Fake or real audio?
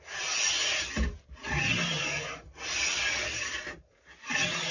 real